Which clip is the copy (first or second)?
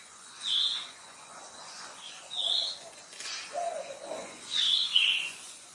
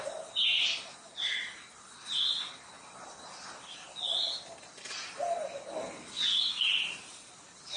first